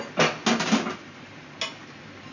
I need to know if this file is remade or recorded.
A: recorded